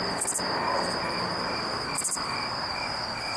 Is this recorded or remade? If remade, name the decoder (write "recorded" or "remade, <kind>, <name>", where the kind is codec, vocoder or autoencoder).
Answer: recorded